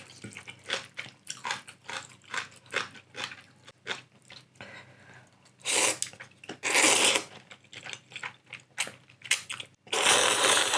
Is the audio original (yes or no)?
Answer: yes